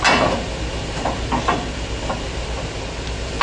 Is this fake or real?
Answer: real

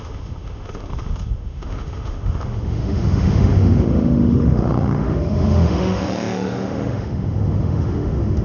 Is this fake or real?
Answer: fake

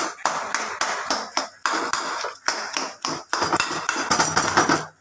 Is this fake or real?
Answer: real